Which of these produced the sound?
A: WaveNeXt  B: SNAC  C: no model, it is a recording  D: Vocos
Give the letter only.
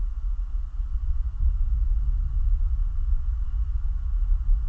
C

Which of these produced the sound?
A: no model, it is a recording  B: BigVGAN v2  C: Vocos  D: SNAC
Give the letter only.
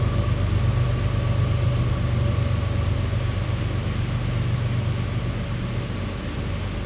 A